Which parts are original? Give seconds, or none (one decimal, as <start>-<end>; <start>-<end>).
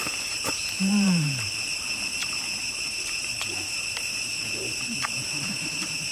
1.5-2.2